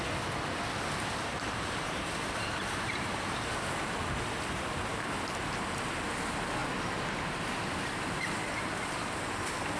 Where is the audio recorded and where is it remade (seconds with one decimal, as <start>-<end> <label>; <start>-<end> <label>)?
0.0-1.3 recorded; 1.3-3.4 remade; 3.4-9.8 recorded

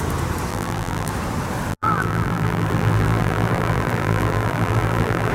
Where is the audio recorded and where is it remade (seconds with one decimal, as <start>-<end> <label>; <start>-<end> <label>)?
0.0-0.5 recorded; 0.5-1.1 remade; 1.1-1.7 recorded; 1.7-5.3 remade

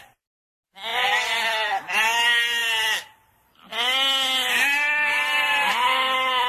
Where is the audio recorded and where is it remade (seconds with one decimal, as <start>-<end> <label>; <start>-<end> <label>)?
0.0-0.9 recorded; 0.9-1.5 remade; 1.5-6.5 recorded

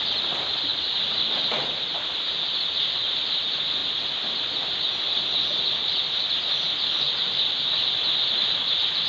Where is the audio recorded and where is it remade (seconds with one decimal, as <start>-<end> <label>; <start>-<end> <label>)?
0.0-9.1 recorded

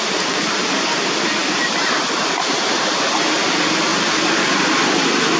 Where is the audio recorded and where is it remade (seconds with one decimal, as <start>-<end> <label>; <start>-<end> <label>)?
0.0-5.4 recorded

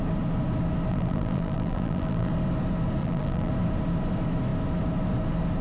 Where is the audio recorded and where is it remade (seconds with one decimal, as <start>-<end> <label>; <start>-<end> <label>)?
0.0-0.9 recorded; 0.9-2.3 remade; 2.3-3.0 recorded; 3.0-3.5 remade; 3.5-5.6 recorded